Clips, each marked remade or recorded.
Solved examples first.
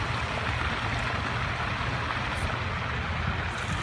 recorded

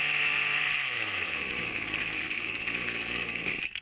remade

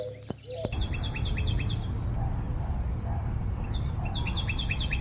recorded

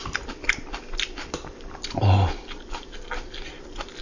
recorded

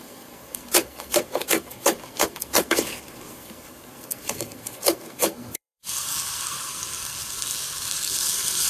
remade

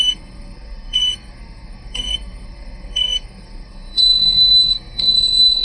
remade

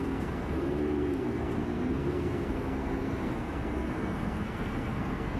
remade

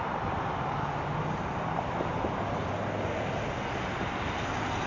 recorded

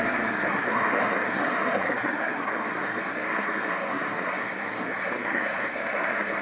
remade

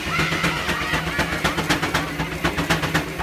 recorded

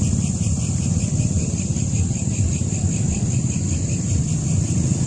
recorded